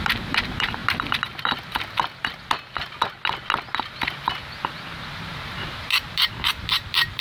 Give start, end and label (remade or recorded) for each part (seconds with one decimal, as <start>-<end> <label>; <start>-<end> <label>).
0.0-0.8 remade; 0.8-5.1 recorded; 5.1-7.2 remade